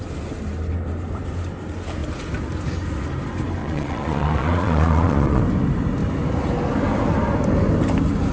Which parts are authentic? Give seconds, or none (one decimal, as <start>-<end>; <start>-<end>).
0.0-3.6; 5.4-8.3

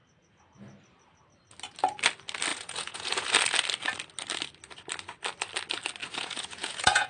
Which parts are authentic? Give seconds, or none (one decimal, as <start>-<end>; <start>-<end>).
0.0-2.5; 3.3-6.0

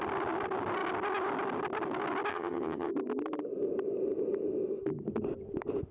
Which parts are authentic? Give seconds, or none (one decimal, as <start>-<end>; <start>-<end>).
0.0-2.3; 2.9-5.9

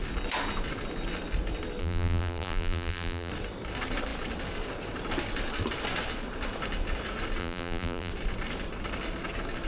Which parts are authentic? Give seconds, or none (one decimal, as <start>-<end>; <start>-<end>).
0.0-1.8; 3.3-7.4; 8.1-9.7

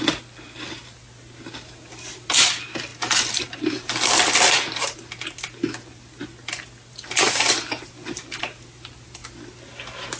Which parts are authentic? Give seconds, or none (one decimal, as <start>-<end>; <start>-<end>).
0.0-10.2

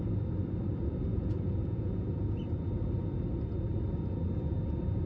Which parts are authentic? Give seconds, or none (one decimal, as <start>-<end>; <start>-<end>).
0.0-1.1; 2.1-5.1

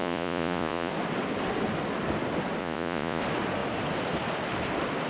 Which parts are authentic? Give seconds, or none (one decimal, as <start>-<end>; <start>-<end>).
0.9-2.6; 3.2-5.1

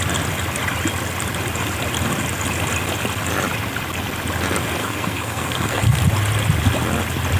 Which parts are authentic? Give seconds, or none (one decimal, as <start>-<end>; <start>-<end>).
0.0-4.8; 6.0-7.4